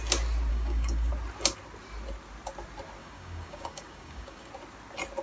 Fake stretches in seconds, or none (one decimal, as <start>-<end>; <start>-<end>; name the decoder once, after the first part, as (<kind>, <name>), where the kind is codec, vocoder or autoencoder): 0.5-1.1 (codec, DAC); 3.0-4.5